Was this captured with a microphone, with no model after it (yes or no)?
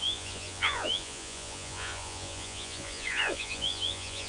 no